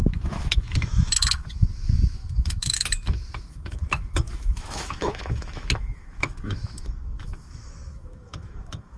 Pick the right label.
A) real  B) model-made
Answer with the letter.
B